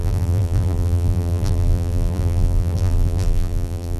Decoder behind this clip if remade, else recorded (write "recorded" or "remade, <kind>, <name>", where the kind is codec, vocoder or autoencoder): remade, vocoder, BigVGAN v2